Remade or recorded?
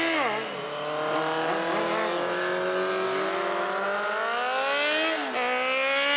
recorded